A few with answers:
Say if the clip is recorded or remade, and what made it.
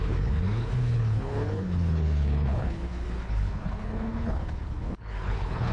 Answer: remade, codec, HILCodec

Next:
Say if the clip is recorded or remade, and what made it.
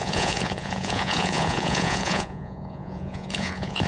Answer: remade, vocoder, Vocos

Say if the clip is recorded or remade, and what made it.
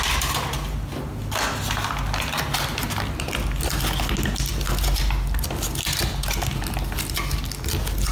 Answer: recorded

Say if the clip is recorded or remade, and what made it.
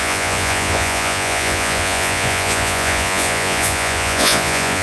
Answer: remade, vocoder, Vocos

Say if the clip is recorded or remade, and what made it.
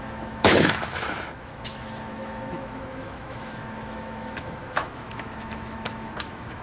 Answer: remade, autoencoder, DAC-VAE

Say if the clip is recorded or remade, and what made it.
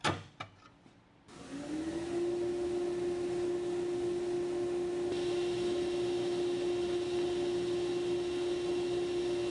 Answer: recorded